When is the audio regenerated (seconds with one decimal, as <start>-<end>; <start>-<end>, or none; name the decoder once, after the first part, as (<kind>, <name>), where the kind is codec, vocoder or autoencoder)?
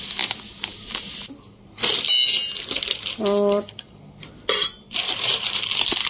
5.0-5.6 (vocoder, BigVGAN v2)